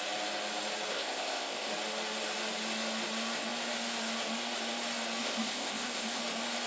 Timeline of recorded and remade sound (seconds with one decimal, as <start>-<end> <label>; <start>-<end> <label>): 0.0-0.9 recorded; 0.9-1.7 remade; 1.7-5.2 recorded; 5.2-6.2 remade; 6.2-6.7 recorded